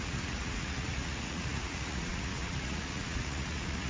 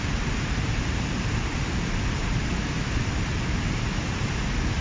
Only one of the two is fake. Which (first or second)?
first